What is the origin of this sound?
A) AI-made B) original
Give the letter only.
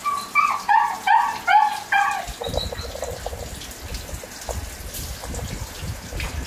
B